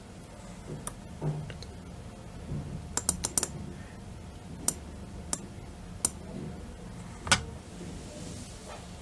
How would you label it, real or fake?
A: real